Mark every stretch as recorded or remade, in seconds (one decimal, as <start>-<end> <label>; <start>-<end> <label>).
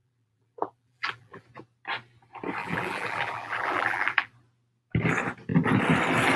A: 0.0-1.4 remade; 1.4-2.6 recorded; 2.6-4.3 remade; 4.3-6.4 recorded